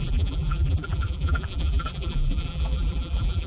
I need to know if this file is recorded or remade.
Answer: remade